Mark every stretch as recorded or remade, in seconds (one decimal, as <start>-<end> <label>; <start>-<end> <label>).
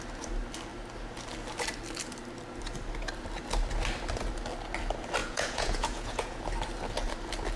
0.0-5.2 recorded; 5.2-6.4 remade; 6.4-7.6 recorded